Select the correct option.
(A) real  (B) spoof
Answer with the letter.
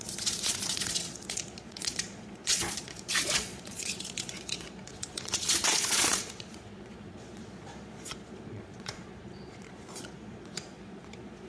B